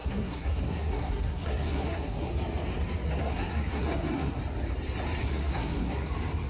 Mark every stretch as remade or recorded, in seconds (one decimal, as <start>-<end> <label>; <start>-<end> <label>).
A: 0.0-2.3 remade; 2.3-3.2 recorded; 3.2-4.4 remade; 4.4-5.2 recorded; 5.2-6.1 remade; 6.1-6.5 recorded

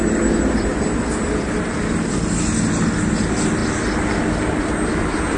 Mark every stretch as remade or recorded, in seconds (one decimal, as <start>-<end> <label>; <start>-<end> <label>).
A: 0.0-5.4 recorded

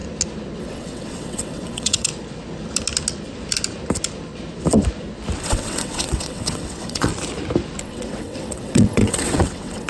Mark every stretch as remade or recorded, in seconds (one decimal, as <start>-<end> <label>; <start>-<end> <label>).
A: 0.0-0.6 recorded; 0.6-2.1 remade; 2.1-5.4 recorded; 5.4-7.1 remade; 7.1-7.8 recorded; 7.8-9.9 remade